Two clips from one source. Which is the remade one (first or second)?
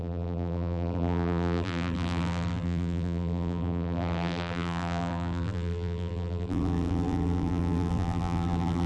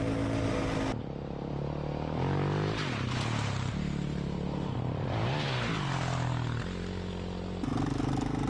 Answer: first